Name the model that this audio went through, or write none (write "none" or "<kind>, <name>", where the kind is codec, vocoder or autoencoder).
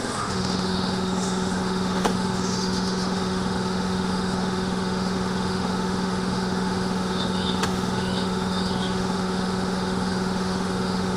autoencoder, DAC-VAE